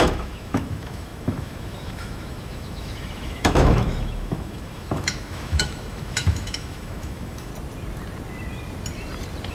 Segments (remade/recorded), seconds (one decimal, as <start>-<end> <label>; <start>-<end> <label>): 0.0-7.5 remade; 7.5-9.5 recorded